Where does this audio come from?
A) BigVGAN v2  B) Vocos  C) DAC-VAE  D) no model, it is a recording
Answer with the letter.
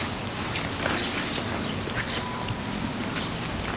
D